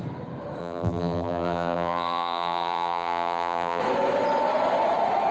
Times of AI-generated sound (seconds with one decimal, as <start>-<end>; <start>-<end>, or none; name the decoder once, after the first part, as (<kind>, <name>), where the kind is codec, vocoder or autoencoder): 0.6-3.8 (vocoder, BigVGAN v2)

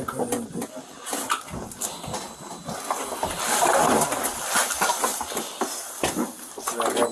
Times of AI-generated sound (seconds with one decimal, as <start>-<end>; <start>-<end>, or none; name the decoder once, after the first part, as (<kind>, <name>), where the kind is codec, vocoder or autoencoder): none

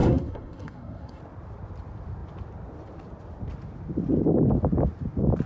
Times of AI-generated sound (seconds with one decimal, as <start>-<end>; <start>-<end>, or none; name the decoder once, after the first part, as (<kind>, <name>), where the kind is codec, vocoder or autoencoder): 0.0-1.2 (codec, SNAC)

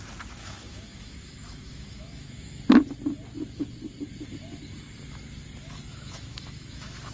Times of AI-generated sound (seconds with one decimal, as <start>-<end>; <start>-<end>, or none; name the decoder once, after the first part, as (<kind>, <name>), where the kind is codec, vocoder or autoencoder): 0.4-2.6 (autoencoder, DAC-VAE); 5.9-7.1

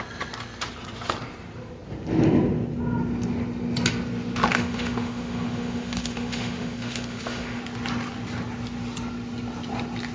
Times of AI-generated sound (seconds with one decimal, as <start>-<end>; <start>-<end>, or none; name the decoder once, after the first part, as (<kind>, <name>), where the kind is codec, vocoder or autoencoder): 4.5-7.6 (autoencoder, DAC-VAE)

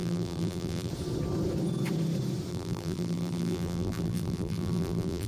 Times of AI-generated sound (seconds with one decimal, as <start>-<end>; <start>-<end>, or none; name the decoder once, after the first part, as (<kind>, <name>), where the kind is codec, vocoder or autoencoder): 0.0-0.9 (vocoder, BigVGAN v2); 2.5-5.3

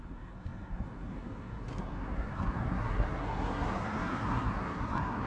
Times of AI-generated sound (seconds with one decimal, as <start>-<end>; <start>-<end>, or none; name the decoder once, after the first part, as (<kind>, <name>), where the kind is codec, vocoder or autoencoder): 0.0-5.3 (codec, SNAC)

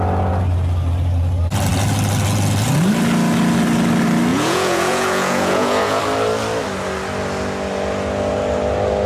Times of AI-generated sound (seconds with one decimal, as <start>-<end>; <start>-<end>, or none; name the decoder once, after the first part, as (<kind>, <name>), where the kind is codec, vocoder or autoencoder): 4.3-6.0 (vocoder, Vocos)